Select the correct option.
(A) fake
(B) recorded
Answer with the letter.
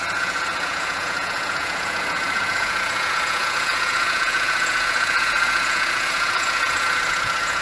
A